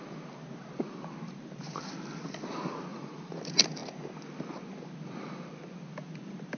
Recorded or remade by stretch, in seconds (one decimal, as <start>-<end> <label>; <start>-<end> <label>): 0.0-2.9 recorded; 2.9-3.4 remade; 3.4-6.6 recorded